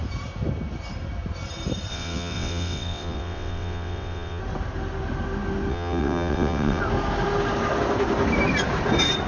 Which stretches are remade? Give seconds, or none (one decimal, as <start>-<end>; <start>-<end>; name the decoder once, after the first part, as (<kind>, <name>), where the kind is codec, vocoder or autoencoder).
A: 1.9-4.4 (vocoder, WaveNeXt); 5.7-6.8